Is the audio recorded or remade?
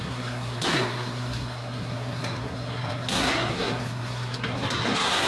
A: remade